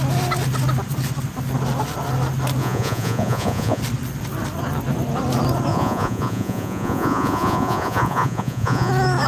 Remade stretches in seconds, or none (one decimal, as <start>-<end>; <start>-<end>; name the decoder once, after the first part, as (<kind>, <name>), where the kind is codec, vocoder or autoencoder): 2.6-3.8 (vocoder, Vocos); 5.7-8.9